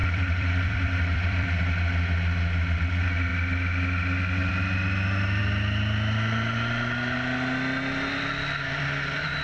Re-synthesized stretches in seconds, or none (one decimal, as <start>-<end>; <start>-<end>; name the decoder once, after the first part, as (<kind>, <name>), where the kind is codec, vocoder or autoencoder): 0.0-1.6 (vocoder, BigVGAN v2)